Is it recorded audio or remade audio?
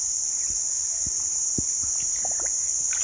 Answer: recorded